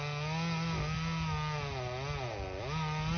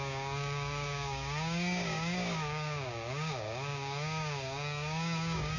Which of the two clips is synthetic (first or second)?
second